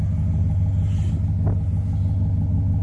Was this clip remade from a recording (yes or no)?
no